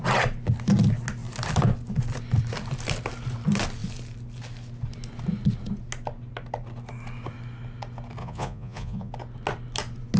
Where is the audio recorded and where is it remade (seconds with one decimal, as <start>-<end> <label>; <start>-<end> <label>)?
0.0-8.2 recorded; 8.2-9.1 remade; 9.1-10.2 recorded